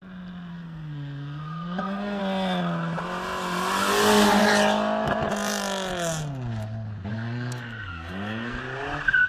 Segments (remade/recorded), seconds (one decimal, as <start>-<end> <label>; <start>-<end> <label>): 0.0-0.5 recorded; 0.5-2.2 remade; 2.2-7.1 recorded; 7.1-8.6 remade; 8.6-9.3 recorded